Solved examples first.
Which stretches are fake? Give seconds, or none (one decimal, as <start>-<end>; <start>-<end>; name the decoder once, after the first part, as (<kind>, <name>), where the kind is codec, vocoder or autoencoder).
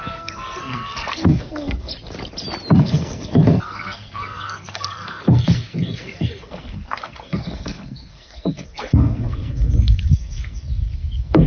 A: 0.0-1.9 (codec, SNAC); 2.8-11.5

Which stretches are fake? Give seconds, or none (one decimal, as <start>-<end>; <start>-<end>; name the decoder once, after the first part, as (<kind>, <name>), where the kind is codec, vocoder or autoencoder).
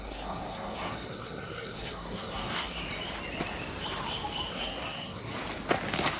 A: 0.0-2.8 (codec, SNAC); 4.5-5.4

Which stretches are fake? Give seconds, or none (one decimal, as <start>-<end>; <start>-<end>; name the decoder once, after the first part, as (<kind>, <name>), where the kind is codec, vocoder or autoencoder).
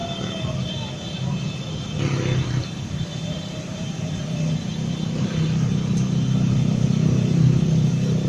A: 2.8-8.3 (vocoder, BigVGAN v2)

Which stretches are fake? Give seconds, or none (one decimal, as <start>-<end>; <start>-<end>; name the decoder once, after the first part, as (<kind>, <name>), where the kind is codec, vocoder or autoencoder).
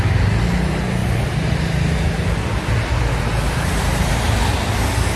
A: 1.0-4.1 (vocoder, BigVGAN v2)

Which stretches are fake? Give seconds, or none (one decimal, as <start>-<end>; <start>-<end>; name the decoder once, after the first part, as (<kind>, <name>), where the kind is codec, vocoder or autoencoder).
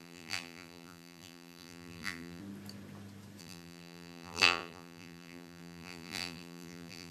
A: 0.0-2.4 (vocoder, BigVGAN v2); 3.4-7.1